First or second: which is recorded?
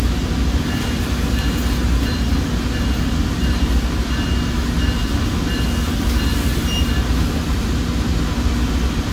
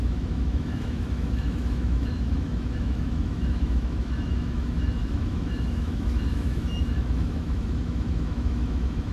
first